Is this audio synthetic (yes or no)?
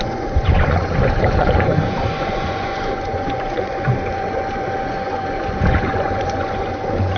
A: yes